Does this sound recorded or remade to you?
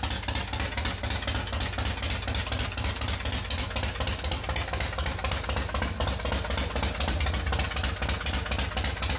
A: recorded